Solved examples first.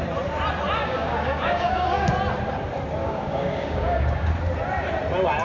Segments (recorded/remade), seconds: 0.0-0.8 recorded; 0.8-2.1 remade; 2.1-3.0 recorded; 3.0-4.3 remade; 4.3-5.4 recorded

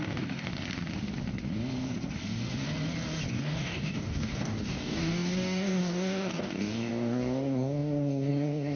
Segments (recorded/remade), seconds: 0.0-0.5 remade; 0.5-3.3 recorded; 3.3-8.8 remade

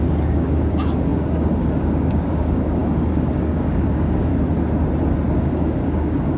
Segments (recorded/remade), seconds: 0.0-4.3 remade; 4.3-5.4 recorded; 5.4-6.4 remade

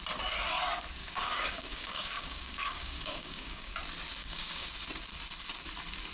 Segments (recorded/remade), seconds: 0.0-1.0 recorded; 1.0-3.7 remade; 3.7-4.2 recorded; 4.2-4.7 remade; 4.7-6.1 recorded